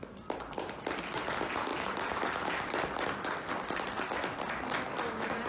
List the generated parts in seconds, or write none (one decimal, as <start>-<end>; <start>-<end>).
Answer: none